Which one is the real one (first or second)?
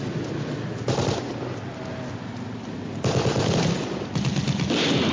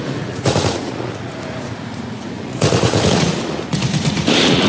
first